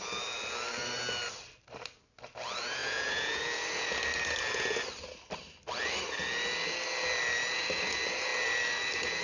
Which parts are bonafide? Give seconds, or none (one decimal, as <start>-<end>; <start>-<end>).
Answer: 0.0-2.8; 3.4-9.2